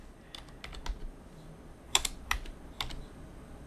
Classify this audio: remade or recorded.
recorded